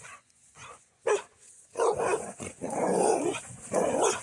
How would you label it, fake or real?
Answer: fake